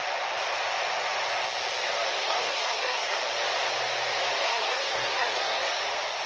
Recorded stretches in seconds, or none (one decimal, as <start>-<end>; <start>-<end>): 0.0-2.2; 3.2-4.4; 5.8-6.3